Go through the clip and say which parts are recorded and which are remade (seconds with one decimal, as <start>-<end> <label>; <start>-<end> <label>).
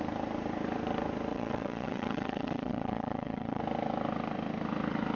0.0-1.3 recorded; 1.3-3.6 remade; 3.6-5.2 recorded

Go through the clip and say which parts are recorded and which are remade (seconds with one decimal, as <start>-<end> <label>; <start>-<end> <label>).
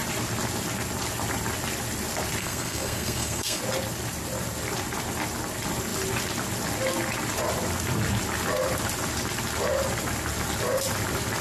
0.0-2.4 recorded; 2.4-3.6 remade; 3.6-11.4 recorded